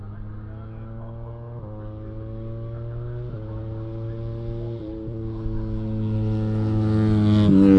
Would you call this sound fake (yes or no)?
no